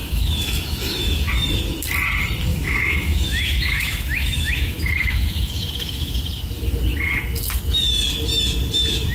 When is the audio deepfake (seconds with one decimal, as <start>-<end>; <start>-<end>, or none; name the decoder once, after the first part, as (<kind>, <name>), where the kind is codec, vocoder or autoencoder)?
0.0-1.3 (autoencoder, DAC-VAE); 2.5-6.2